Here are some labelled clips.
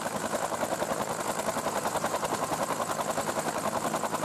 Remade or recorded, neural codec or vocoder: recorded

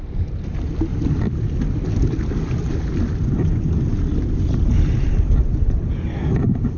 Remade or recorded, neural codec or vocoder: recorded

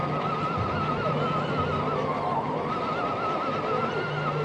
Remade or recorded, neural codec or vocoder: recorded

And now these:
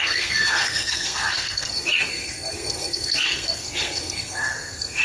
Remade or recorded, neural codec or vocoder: remade, codec, SNAC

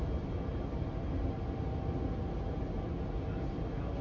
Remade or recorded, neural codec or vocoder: recorded